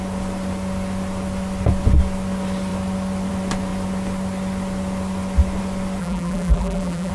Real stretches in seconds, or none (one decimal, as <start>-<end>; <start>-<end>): 0.0-6.0